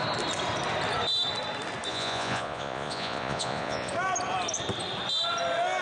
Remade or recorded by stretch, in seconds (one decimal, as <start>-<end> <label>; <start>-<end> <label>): 0.0-1.9 recorded; 1.9-3.9 remade; 3.9-5.8 recorded